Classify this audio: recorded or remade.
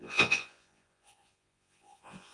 remade